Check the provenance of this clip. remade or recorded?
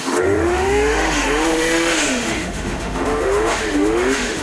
remade